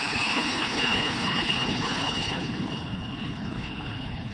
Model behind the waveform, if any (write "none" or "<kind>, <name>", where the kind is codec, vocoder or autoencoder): codec, HILCodec